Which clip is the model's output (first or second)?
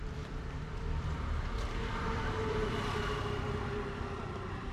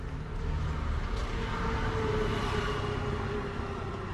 first